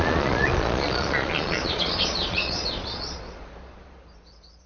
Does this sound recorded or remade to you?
remade